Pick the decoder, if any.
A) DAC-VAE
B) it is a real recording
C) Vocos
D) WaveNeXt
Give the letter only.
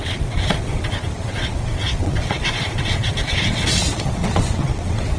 D